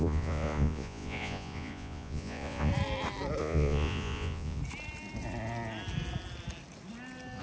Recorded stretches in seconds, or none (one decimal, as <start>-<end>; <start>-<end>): 2.7-3.4; 4.6-7.4